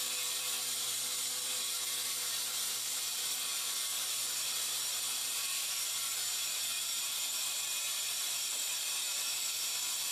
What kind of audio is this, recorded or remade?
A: remade